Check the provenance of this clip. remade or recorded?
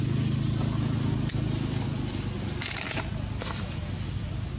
recorded